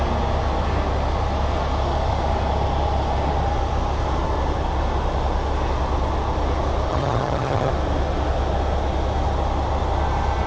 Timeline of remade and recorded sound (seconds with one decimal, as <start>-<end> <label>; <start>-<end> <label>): 0.0-6.9 recorded; 6.9-7.7 remade; 7.7-10.5 recorded